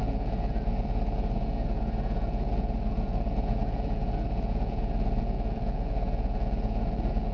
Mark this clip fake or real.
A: fake